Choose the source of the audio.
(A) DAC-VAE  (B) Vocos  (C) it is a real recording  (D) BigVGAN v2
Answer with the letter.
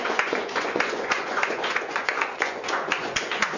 B